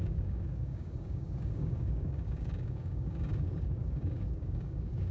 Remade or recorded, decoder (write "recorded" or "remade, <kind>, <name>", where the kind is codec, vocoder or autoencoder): remade, codec, DAC